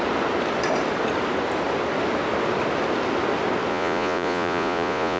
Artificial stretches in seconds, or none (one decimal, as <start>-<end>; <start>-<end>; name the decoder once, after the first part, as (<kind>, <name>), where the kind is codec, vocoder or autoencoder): 3.7-5.2 (vocoder, Vocos)